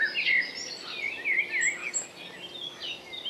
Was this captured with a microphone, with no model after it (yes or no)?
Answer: yes